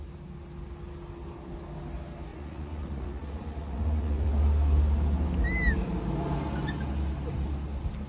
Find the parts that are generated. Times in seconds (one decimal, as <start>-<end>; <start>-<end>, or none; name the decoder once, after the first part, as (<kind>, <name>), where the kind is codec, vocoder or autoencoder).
2.3-4.3 (vocoder, Vocos)